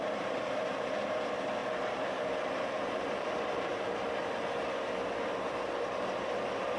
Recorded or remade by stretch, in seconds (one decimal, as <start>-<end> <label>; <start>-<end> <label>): 0.0-1.6 remade; 1.6-2.1 recorded; 2.1-3.7 remade; 3.7-4.2 recorded; 4.2-6.8 remade